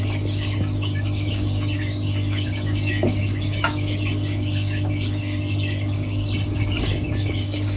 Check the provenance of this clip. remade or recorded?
remade